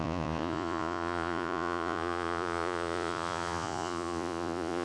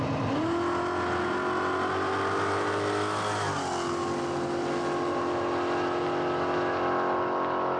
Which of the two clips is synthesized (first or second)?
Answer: first